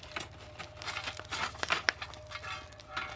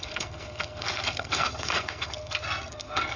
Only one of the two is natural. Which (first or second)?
first